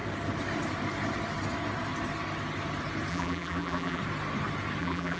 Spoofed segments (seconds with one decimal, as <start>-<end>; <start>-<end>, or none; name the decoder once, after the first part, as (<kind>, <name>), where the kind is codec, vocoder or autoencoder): 3.1-4.0 (vocoder, BigVGAN v2); 4.8-5.2